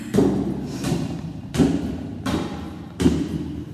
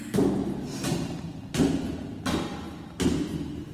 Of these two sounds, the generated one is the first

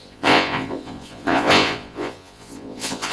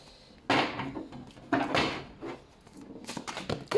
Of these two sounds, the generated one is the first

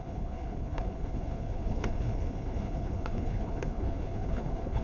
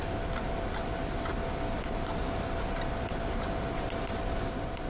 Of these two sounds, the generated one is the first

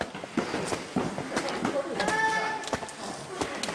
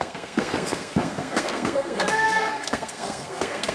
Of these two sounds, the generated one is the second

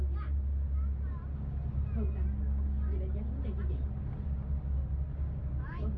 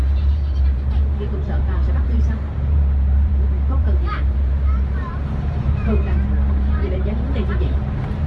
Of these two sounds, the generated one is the second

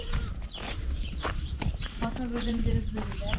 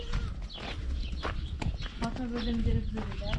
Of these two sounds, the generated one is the first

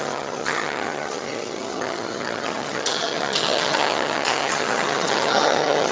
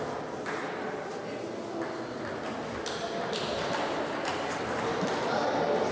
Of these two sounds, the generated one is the first